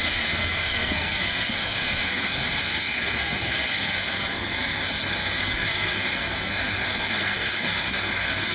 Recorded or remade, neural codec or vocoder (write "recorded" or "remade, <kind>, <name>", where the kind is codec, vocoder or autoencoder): remade, codec, SNAC